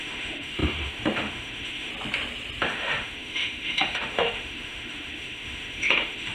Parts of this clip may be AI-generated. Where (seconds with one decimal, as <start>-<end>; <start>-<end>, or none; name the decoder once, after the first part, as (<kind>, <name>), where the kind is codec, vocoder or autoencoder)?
0.0-1.9 (autoencoder, DAC-VAE); 2.6-6.3